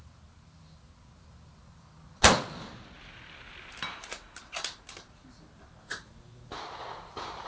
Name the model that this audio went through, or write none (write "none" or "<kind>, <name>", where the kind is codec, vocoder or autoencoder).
none